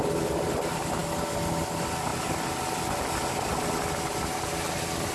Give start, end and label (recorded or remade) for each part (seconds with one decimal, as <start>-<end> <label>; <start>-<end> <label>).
0.0-5.1 recorded